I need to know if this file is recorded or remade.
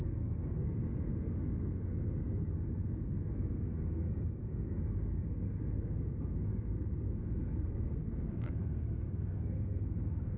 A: remade